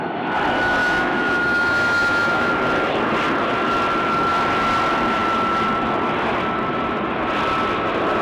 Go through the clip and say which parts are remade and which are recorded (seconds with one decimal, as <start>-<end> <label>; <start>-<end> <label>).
0.0-0.8 recorded; 0.8-2.5 remade; 2.5-8.2 recorded

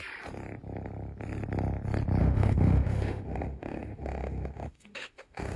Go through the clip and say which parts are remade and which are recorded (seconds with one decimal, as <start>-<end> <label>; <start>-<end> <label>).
0.0-2.2 recorded; 2.2-5.6 remade

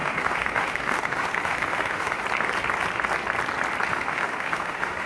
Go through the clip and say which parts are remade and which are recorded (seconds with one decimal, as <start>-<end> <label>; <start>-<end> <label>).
0.0-2.2 remade; 2.2-3.9 recorded; 3.9-5.1 remade

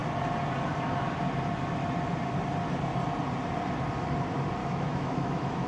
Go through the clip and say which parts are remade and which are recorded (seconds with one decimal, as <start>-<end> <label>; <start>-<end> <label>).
0.0-4.6 recorded; 4.6-5.7 remade

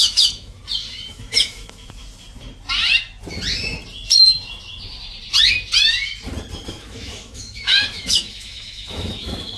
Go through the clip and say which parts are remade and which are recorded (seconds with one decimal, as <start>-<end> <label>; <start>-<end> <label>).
0.0-0.6 remade; 0.6-1.1 recorded; 1.1-2.0 remade; 2.0-6.7 recorded; 6.7-9.6 remade

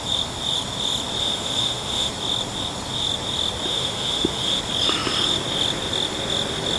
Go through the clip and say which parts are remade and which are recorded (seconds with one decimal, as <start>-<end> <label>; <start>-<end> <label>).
0.0-1.2 recorded; 1.2-2.1 remade; 2.1-3.7 recorded; 3.7-4.6 remade; 4.6-6.8 recorded

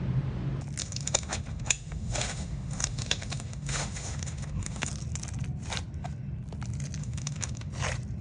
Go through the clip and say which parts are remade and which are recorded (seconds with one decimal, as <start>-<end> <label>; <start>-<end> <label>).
0.0-0.8 recorded; 0.8-4.9 remade; 4.9-7.0 recorded; 7.0-7.7 remade; 7.7-8.2 recorded

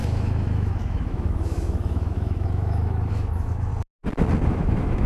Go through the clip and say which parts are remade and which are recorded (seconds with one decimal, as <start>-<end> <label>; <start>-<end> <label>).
0.0-3.7 remade; 3.7-4.5 recorded; 4.5-5.1 remade